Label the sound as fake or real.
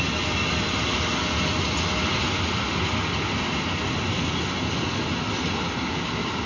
real